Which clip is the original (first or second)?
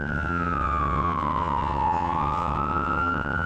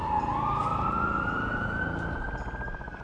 second